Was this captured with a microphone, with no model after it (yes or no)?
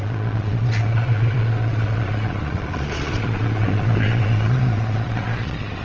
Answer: no